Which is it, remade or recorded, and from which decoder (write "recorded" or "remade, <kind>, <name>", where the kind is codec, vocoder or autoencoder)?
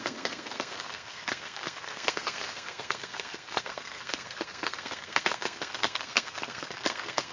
remade, codec, SNAC